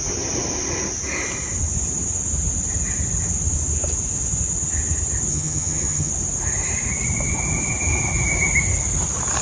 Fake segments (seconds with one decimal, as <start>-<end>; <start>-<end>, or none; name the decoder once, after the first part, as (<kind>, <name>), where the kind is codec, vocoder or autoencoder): 5.3-6.1 (vocoder, HiFi-GAN)